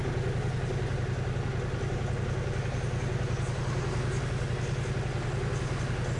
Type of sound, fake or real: real